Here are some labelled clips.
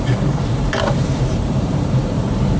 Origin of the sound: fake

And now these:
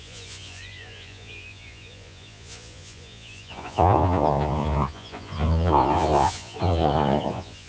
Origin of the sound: fake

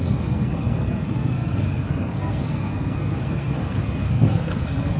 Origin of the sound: fake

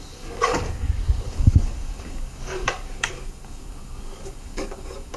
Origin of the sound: fake